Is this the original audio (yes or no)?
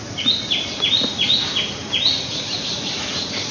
yes